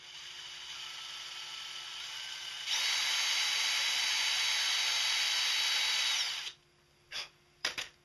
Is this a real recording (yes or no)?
yes